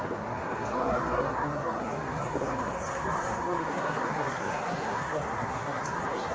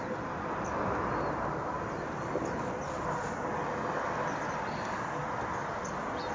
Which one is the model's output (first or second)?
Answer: first